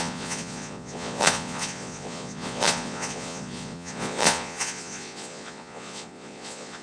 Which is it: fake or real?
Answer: fake